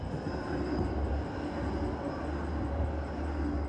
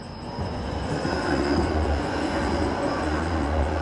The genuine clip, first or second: first